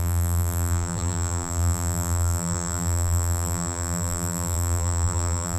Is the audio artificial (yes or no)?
yes